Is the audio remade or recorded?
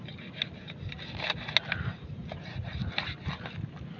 recorded